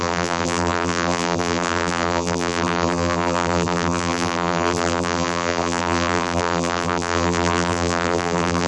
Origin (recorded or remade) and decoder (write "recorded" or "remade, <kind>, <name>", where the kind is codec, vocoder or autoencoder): remade, vocoder, BigVGAN v2